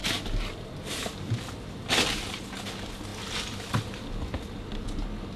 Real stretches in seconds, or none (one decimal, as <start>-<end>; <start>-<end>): 0.0-5.4